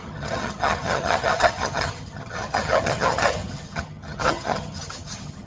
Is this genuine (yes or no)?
no